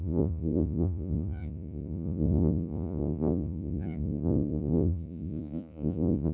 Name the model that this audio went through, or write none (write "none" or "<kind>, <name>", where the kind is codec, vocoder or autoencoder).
vocoder, Vocos